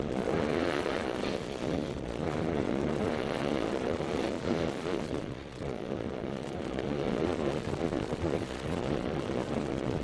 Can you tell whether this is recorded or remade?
remade